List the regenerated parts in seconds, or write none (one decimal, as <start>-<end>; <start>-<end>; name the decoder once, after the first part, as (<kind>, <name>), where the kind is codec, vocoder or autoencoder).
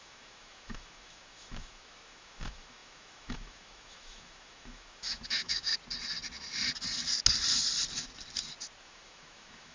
0.0-5.7 (autoencoder, DAC-VAE); 8.8-9.7